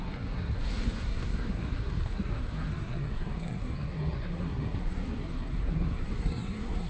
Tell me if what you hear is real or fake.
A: fake